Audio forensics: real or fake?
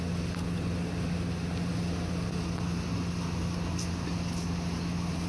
real